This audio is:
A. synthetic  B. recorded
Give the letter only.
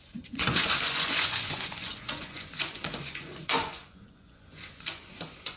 A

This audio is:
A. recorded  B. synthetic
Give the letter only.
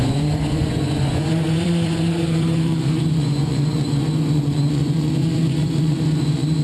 B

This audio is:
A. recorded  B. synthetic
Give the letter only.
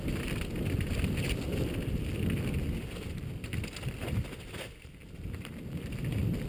A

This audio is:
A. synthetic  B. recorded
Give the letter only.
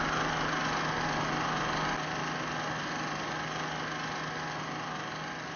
B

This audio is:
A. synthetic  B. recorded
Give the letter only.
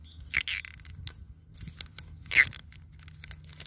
B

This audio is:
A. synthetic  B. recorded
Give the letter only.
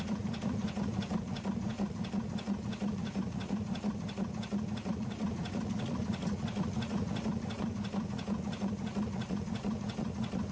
A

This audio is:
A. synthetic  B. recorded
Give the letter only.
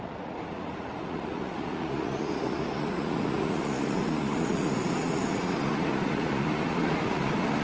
A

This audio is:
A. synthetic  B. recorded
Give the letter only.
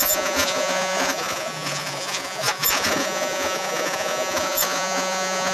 A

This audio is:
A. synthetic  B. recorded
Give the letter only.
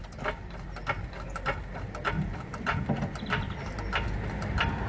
B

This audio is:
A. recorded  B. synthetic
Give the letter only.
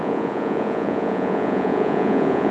B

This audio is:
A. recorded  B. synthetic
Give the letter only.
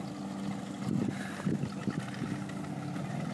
A